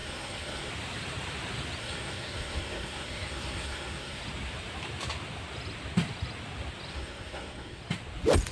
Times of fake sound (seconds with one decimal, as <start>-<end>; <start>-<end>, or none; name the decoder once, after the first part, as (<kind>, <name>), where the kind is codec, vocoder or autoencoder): 0.0-0.7 (codec, SNAC); 1.8-4.2; 6.9-7.8